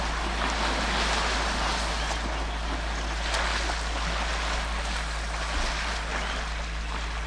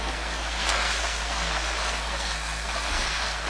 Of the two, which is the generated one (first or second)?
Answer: second